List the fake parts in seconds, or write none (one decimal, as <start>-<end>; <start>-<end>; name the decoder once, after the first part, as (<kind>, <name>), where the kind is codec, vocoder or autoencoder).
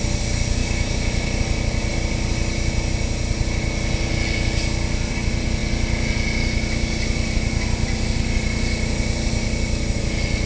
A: 0.6-1.4 (autoencoder, DAC-VAE)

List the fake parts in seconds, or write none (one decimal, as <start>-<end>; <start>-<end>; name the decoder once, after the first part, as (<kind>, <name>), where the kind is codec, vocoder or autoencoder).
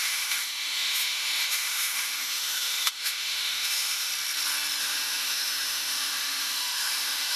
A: 0.0-4.1 (autoencoder, DAC-VAE); 4.8-7.4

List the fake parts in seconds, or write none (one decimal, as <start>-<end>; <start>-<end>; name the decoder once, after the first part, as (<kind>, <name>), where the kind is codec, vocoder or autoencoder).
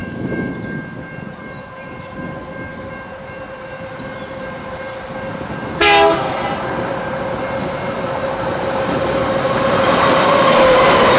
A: 0.0-0.5 (autoencoder, DAC-VAE)